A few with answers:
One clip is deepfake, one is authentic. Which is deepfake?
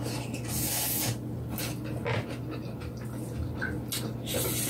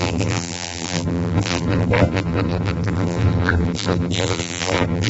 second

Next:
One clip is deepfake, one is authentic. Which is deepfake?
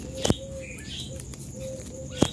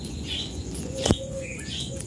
second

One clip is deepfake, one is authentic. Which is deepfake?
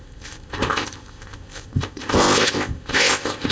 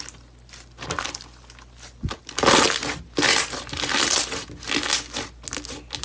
first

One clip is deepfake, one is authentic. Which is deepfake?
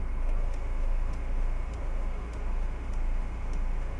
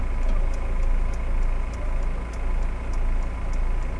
first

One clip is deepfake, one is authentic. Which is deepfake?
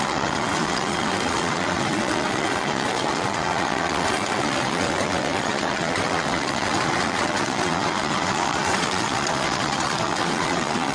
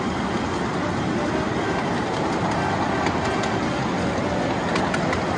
first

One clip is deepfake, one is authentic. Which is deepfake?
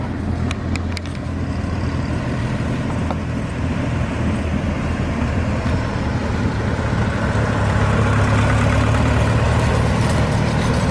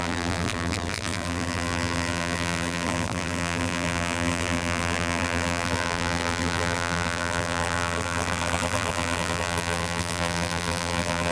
second